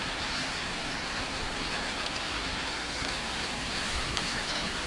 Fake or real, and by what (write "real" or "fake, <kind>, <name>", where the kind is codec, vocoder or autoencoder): fake, codec, SNAC